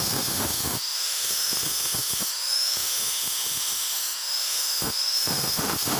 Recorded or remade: remade